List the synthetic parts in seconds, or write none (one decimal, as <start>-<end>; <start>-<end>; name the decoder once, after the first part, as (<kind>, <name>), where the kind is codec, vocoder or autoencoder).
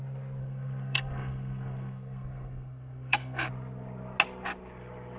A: 0.4-3.5 (codec, SNAC)